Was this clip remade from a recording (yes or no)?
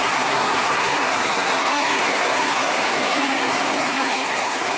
yes